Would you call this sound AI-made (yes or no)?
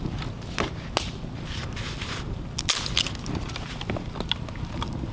no